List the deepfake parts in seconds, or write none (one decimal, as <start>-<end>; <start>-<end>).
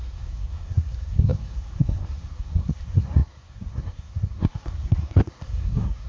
0.0-6.1